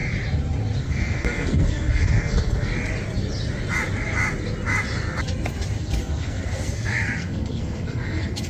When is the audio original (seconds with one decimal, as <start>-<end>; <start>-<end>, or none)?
0.0-0.8; 2.7-5.8